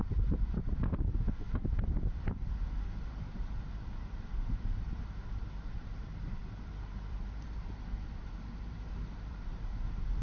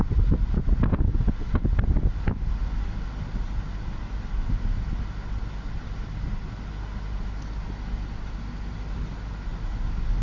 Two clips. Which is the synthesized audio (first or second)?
first